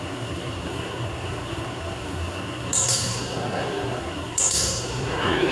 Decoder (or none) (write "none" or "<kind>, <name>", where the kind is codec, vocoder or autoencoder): codec, SNAC